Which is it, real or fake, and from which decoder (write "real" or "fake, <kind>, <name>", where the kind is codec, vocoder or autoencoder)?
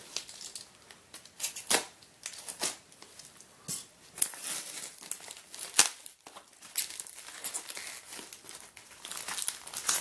real